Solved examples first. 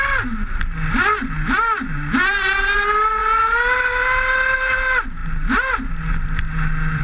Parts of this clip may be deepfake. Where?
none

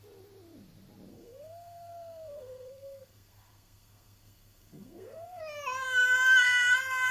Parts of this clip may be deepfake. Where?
1.1-5.4 (codec, SNAC)

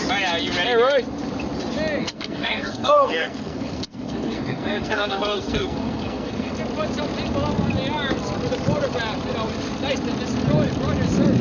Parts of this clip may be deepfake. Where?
2.0-6.6 (codec, SNAC)

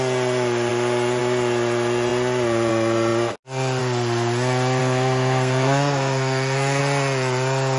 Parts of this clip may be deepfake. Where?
4.8-6.8 (codec, SNAC)

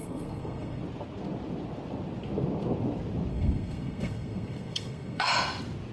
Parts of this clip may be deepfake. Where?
0.0-0.8 (codec, SNAC); 3.3-5.3

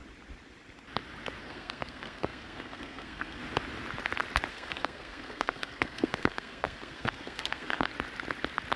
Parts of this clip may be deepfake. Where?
1.4-3.4 (codec, SNAC); 4.5-7.9

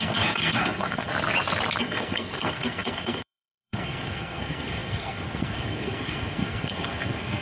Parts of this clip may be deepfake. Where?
0.0-1.1 (codec, SNAC); 1.8-7.4